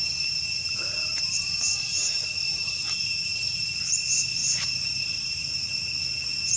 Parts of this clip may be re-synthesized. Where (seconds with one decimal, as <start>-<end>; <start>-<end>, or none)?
0.0-4.0; 4.4-5.8